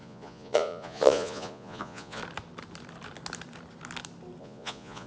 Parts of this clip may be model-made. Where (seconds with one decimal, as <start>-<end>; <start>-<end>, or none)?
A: 0.0-2.2; 4.4-5.1